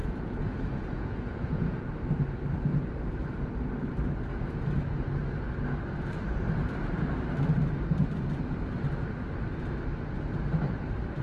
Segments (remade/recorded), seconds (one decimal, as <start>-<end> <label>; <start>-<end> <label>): 0.0-1.9 remade; 1.9-11.2 recorded